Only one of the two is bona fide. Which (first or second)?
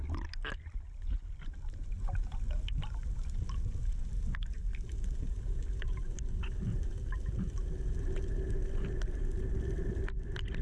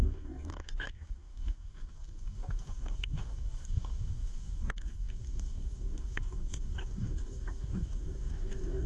first